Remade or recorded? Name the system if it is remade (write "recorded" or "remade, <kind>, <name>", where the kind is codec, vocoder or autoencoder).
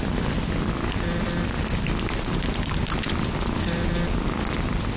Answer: recorded